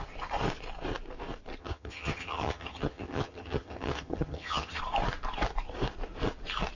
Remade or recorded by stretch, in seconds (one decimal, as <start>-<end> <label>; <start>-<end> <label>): 0.0-1.6 recorded; 1.6-4.8 remade; 4.8-6.8 recorded